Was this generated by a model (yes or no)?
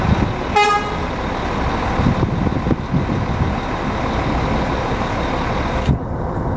no